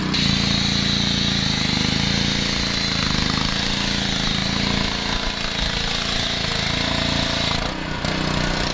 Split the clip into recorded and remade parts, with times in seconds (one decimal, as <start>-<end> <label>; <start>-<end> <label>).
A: 0.0-8.7 recorded